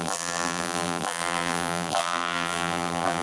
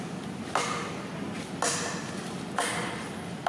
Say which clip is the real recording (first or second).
second